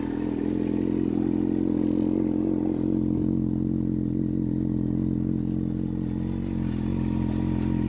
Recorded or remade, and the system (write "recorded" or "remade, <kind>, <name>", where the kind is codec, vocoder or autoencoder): recorded